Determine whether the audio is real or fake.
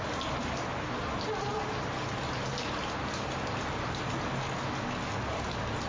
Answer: real